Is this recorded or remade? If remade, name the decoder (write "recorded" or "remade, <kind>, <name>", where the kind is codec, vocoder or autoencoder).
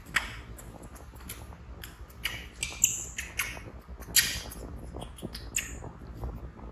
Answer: recorded